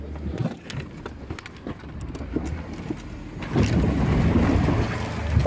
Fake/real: real